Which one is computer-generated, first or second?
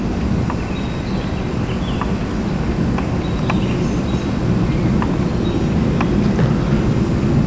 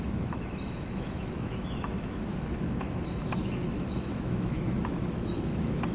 second